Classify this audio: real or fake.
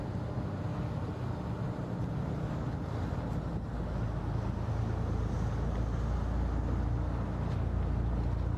real